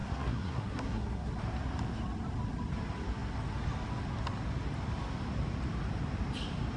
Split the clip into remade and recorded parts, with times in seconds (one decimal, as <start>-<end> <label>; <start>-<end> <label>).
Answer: 0.0-1.3 remade; 1.3-6.8 recorded